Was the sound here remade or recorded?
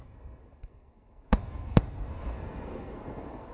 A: remade